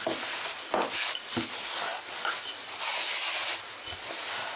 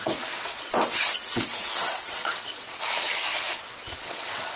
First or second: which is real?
first